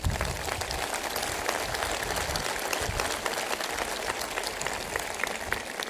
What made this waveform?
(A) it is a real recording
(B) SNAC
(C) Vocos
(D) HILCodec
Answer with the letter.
A